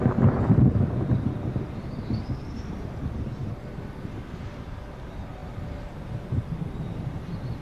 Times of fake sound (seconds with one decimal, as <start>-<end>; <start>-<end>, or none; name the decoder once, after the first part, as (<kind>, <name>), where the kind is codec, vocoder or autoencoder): none